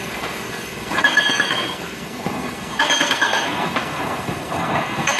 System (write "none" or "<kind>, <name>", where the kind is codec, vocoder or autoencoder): codec, SNAC